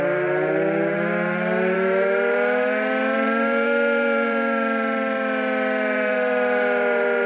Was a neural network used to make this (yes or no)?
yes